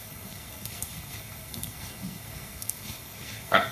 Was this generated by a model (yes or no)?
yes